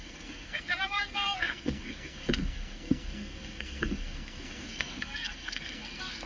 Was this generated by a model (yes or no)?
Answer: yes